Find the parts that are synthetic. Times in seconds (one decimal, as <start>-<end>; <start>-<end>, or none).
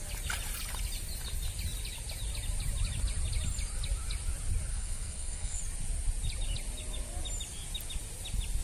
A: 4.7-5.6